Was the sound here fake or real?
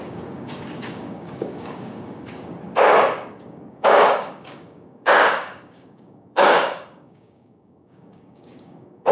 fake